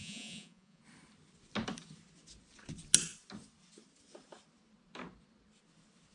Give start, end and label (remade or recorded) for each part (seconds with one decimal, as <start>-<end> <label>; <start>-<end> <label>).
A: 0.0-0.8 remade; 0.8-6.1 recorded